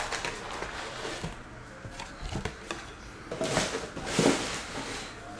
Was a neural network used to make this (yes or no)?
no